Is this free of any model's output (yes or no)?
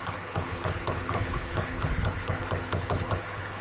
no